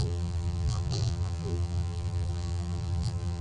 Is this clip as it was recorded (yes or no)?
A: no